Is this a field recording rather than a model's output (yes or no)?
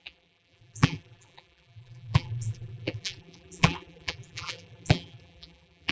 no